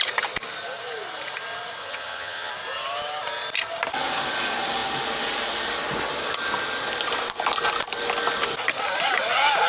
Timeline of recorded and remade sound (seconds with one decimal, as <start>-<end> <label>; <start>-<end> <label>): 0.0-1.8 recorded; 1.8-2.5 remade; 2.5-9.7 recorded